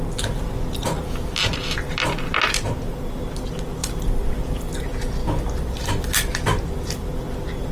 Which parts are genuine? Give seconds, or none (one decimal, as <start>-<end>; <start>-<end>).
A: 0.0-1.5; 2.3-3.8; 4.7-5.2; 5.9-7.7